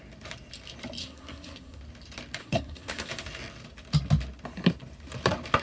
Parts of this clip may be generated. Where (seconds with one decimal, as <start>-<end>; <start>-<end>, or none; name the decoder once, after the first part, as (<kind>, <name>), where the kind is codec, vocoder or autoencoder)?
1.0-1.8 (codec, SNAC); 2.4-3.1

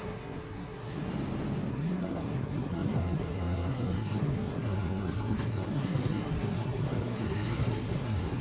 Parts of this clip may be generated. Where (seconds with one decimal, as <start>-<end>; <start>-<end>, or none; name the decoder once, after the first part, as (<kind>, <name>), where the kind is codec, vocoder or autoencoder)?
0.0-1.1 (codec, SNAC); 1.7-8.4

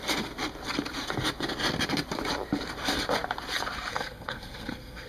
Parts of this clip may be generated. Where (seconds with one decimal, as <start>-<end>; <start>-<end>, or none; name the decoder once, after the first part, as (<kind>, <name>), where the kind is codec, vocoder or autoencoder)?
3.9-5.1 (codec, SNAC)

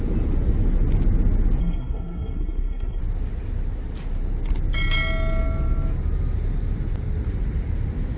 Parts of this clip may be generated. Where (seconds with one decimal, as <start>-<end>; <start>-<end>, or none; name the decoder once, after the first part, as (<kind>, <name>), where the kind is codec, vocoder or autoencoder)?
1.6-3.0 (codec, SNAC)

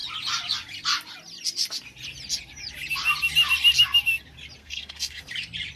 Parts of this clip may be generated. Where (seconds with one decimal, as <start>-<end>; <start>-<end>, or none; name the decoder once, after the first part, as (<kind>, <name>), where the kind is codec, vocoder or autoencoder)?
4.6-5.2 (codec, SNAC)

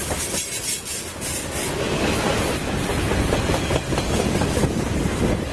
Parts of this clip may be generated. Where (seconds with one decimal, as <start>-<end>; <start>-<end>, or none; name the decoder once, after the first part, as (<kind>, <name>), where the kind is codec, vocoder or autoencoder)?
none

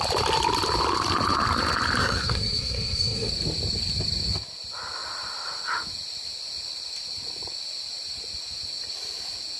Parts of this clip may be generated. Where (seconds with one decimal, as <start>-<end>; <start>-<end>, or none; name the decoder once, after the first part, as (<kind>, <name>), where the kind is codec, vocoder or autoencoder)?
2.0-3.3 (codec, SNAC)

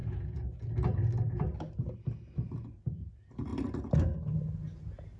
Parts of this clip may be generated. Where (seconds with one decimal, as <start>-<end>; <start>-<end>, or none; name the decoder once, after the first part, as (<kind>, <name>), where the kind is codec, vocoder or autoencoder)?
none